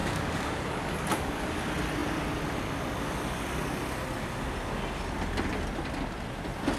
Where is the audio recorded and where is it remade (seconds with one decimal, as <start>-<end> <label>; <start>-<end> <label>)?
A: 0.0-1.6 remade; 1.6-6.8 recorded